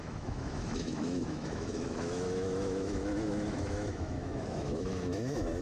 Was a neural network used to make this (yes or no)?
yes